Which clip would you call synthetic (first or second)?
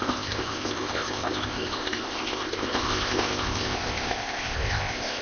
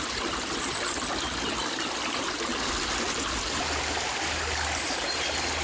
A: first